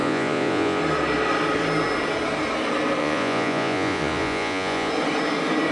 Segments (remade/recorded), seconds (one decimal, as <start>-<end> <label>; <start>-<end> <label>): 0.0-0.8 remade; 0.8-3.0 recorded; 3.0-4.9 remade; 4.9-5.7 recorded